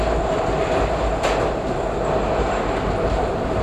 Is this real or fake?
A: real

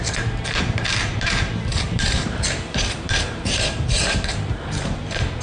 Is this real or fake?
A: fake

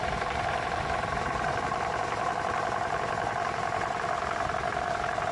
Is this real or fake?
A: fake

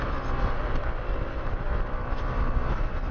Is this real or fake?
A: fake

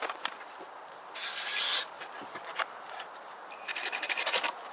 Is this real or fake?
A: fake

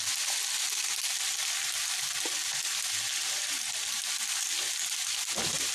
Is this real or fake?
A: real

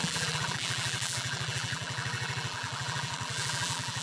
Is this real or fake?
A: fake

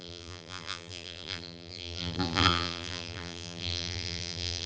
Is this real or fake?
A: fake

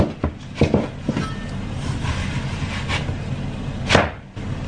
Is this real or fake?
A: real